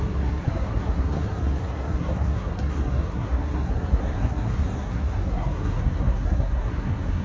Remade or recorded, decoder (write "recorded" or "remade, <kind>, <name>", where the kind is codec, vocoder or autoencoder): remade, codec, SNAC